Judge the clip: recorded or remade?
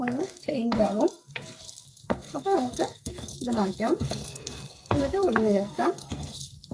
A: remade